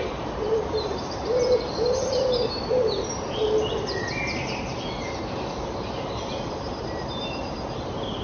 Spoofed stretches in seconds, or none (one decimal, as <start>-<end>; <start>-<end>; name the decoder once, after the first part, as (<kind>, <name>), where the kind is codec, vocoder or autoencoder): 0.0-1.2 (vocoder, BigVGAN v2); 4.9-8.2